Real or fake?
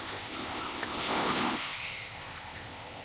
fake